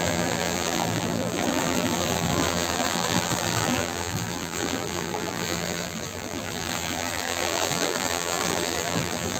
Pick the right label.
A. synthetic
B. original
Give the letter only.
A